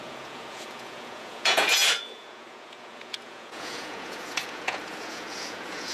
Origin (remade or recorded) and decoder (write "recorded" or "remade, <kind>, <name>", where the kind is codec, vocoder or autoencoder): remade, vocoder, Vocos